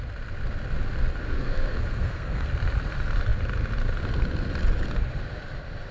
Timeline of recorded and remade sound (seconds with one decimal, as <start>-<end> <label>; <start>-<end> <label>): 0.0-1.2 recorded; 1.2-2.5 remade; 2.5-5.9 recorded